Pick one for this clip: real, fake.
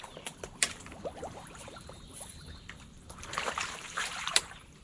fake